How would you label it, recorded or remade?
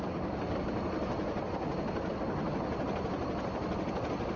recorded